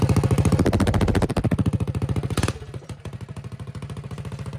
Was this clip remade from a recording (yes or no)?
no